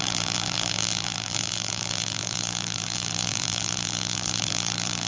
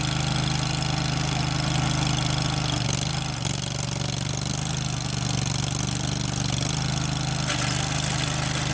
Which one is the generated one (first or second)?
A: first